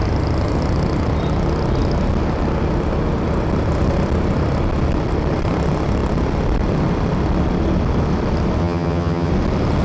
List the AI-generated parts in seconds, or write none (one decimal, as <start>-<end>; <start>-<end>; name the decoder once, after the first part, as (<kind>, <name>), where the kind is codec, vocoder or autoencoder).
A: 8.6-9.3 (vocoder, HiFi-GAN)

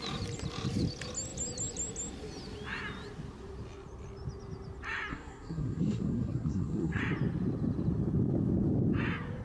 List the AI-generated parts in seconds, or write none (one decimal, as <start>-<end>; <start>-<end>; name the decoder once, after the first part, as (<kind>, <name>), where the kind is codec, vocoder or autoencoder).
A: 5.1-7.0 (codec, SNAC)

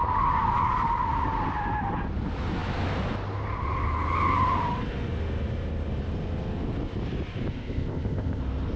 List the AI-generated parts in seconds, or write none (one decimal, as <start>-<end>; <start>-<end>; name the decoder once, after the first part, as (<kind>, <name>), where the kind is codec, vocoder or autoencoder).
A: 7.5-8.4 (codec, ZipCodec)

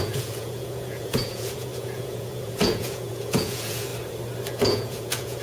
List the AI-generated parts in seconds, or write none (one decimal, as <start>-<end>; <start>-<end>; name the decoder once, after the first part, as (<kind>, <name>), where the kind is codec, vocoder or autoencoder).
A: 0.0-3.9 (vocoder, Vocos); 4.5-5.4

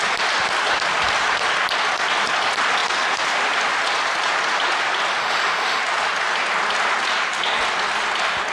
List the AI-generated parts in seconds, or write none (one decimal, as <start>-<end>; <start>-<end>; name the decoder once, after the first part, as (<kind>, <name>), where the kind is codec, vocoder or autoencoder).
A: 5.2-5.8 (autoencoder, DAC-VAE)

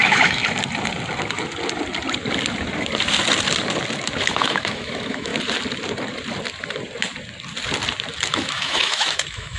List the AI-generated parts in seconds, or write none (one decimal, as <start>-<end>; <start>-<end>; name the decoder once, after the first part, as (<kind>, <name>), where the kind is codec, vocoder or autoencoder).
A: 0.0-0.4 (autoencoder, DAC-VAE); 4.3-5.3; 8.2-9.6

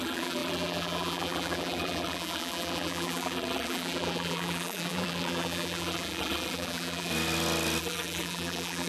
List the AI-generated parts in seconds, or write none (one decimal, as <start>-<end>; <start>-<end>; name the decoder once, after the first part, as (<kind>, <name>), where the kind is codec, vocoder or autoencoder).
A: 0.0-7.1 (vocoder, BigVGAN v2); 7.8-8.9